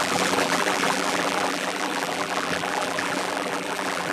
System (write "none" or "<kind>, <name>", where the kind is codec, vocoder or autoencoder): vocoder, BigVGAN v2